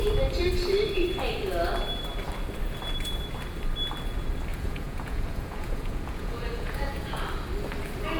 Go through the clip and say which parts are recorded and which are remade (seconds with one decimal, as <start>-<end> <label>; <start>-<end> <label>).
0.0-4.5 recorded; 4.5-7.2 remade; 7.2-8.2 recorded